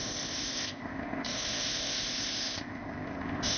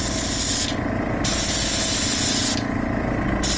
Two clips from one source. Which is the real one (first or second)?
second